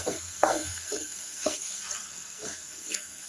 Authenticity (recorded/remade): remade